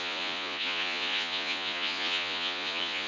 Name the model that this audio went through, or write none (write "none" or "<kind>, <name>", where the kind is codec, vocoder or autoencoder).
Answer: vocoder, Vocos